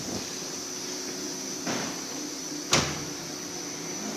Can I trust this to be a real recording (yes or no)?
yes